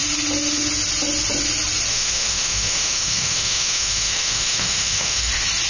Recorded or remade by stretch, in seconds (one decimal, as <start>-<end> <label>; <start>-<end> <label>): 0.0-1.9 recorded; 1.9-5.3 remade; 5.3-5.7 recorded